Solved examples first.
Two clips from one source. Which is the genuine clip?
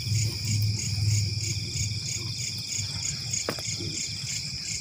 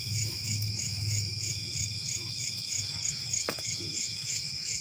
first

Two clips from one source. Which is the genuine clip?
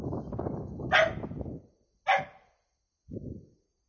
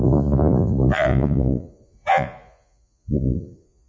first